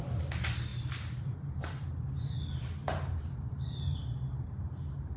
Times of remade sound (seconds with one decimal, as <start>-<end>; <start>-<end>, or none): 0.7-1.9; 2.8-4.0